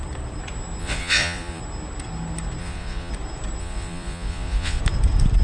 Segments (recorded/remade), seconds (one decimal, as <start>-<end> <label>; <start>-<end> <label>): 0.0-0.8 recorded; 0.8-1.6 remade; 1.6-2.6 recorded; 2.6-3.1 remade; 3.1-3.6 recorded; 3.6-4.8 remade; 4.8-5.4 recorded